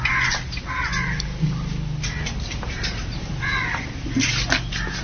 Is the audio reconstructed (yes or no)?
no